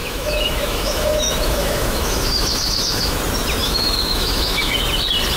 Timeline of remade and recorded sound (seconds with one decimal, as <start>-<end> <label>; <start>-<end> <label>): 0.0-3.2 remade; 3.2-3.6 recorded; 3.6-4.7 remade; 4.7-5.4 recorded